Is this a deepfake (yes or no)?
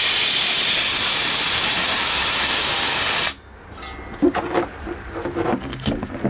no